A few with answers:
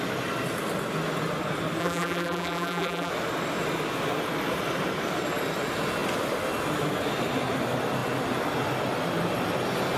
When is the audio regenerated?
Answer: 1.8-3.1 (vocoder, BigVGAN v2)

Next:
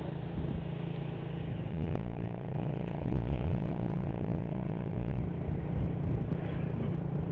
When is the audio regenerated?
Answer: 1.7-5.2 (vocoder, Vocos)

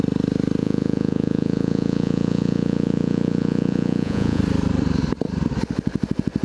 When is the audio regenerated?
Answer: 0.6-4.4 (vocoder, Vocos)

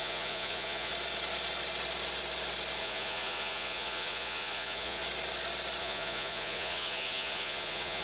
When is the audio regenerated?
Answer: 0.0-0.9 (vocoder, Vocos); 2.8-5.0; 5.8-8.0